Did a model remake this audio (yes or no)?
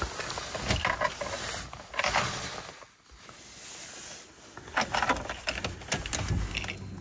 no